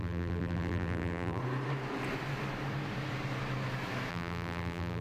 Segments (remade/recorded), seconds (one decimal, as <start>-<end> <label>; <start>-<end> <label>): 0.0-1.4 remade; 1.4-4.1 recorded; 4.1-5.0 remade